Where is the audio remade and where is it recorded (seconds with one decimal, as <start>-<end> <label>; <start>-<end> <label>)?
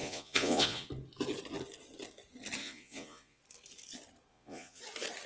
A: 0.0-0.9 remade; 0.9-2.6 recorded; 2.6-3.4 remade; 3.4-4.3 recorded; 4.3-4.8 remade; 4.8-5.3 recorded